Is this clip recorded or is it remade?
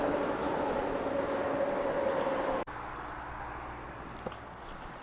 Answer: recorded